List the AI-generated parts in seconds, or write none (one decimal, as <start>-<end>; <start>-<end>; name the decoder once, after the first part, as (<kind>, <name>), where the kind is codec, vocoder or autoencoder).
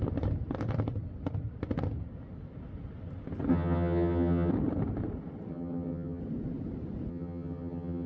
3.5-4.5 (vocoder, HiFi-GAN); 5.5-6.2; 7.1-8.1